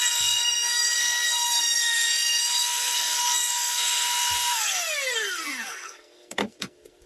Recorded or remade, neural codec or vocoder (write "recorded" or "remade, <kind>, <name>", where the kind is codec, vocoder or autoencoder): remade, codec, SNAC